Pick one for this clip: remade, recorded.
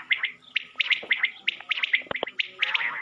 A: recorded